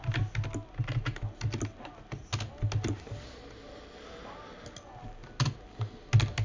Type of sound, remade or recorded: recorded